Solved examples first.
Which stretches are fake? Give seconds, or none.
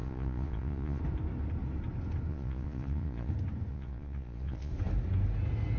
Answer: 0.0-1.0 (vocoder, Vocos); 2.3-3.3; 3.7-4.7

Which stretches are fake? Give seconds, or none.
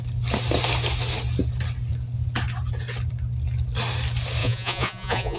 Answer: 4.4-5.4 (vocoder, Vocos)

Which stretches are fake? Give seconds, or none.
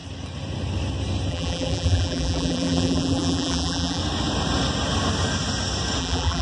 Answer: 1.3-4.0 (vocoder, BigVGAN v2); 6.0-6.4